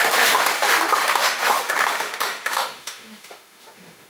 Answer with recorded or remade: remade